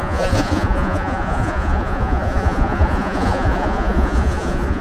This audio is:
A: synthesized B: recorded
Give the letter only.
A